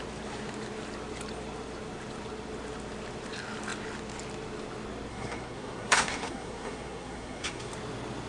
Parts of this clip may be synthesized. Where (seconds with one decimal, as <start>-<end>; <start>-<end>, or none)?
5.1-7.7